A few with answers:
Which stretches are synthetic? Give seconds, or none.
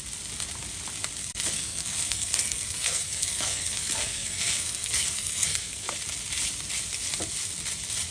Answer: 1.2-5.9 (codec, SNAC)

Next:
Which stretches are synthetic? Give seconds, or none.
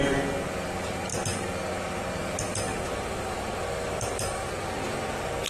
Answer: 2.5-4.4 (vocoder, BigVGAN v2)